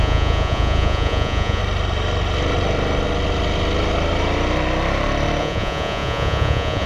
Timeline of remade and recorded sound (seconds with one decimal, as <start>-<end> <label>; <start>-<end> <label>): 0.0-1.6 remade; 1.6-5.4 recorded; 5.4-6.9 remade